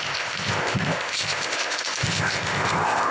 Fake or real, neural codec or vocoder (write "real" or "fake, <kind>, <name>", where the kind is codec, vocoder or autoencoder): fake, codec, ZipCodec